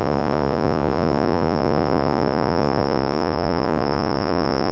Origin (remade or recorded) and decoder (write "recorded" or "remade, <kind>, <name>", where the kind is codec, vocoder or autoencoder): remade, vocoder, Vocos